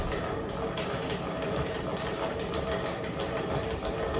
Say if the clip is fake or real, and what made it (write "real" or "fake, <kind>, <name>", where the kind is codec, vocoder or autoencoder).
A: real